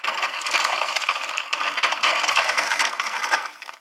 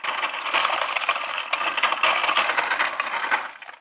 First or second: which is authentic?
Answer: second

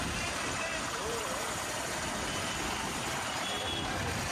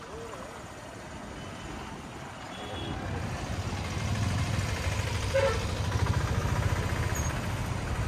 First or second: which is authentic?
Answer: second